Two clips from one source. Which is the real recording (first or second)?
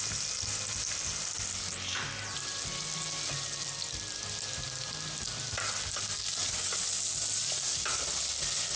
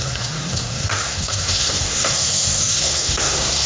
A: first